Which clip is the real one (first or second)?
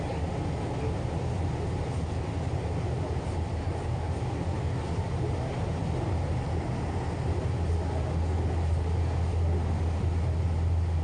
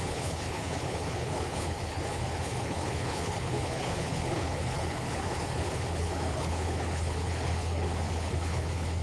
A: first